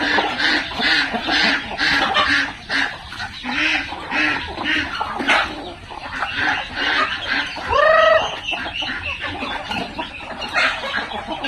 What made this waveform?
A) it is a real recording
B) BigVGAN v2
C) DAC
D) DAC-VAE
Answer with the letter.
A